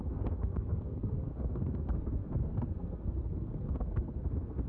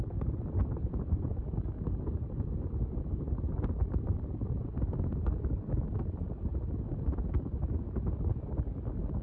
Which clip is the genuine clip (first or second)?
second